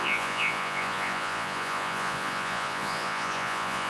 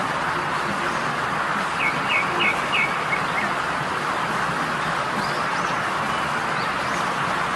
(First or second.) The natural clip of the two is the second